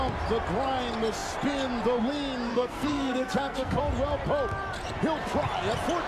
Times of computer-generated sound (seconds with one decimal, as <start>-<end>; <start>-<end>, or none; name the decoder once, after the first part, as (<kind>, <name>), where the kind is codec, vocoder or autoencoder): 2.5-3.8 (codec, SNAC)